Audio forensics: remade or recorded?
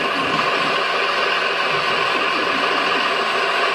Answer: recorded